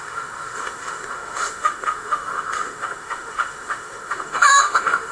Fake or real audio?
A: fake